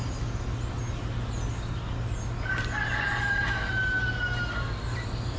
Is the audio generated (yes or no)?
no